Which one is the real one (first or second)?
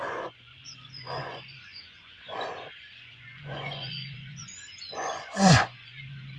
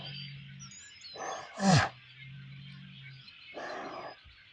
second